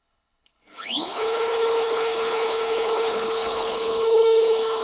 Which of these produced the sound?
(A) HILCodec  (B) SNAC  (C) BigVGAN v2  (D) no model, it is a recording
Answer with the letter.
A